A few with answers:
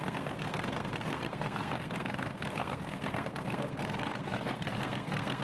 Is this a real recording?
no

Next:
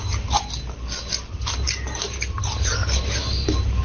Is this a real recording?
yes